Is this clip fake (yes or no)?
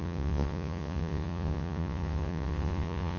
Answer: yes